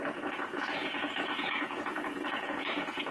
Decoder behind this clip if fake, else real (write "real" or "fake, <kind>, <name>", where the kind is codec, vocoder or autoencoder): fake, vocoder, Vocos